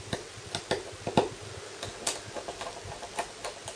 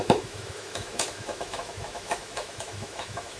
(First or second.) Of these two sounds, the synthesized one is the second